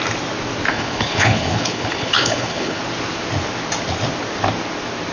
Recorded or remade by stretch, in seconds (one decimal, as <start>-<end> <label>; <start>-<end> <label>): 0.0-0.7 recorded; 0.7-2.8 remade; 2.8-5.1 recorded